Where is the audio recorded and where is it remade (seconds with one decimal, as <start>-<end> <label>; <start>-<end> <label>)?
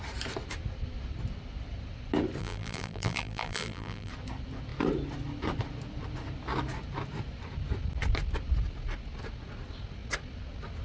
0.0-2.4 recorded; 2.4-4.1 remade; 4.1-10.8 recorded